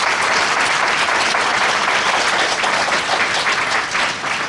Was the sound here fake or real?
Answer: fake